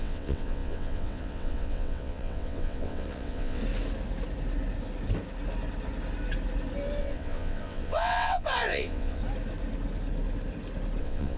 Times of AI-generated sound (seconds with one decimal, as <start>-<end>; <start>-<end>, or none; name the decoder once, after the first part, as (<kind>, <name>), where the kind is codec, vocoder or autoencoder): 0.0-3.6 (vocoder, WaveNeXt); 7.0-9.2; 11.0-11.4